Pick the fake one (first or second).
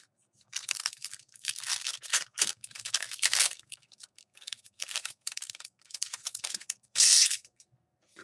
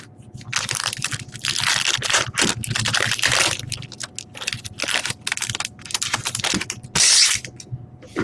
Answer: first